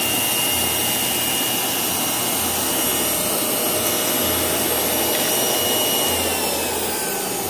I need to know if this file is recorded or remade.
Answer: recorded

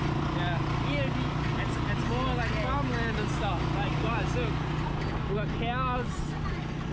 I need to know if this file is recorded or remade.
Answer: recorded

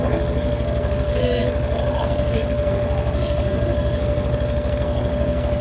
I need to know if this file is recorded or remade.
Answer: remade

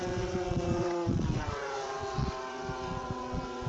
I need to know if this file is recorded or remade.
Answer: remade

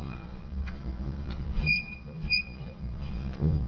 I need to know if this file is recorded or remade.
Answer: remade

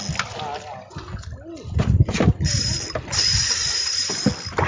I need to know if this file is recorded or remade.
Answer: recorded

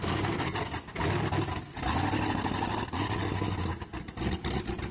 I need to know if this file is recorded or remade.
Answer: recorded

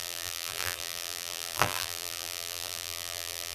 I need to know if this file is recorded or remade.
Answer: remade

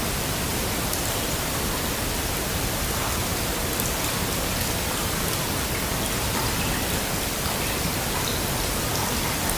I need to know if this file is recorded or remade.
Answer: remade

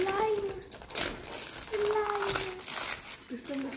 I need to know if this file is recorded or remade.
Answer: recorded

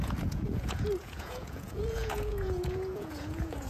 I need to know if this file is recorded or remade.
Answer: remade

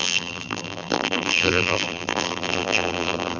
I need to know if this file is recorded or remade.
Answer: remade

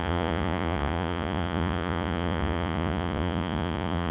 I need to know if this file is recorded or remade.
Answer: remade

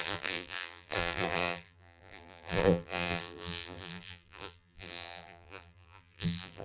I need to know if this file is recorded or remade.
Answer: remade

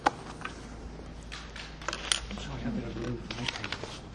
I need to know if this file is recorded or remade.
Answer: recorded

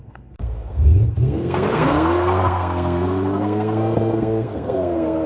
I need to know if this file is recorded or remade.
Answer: remade